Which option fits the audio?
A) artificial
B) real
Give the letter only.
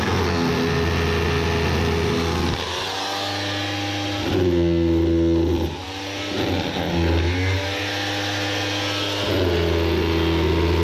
B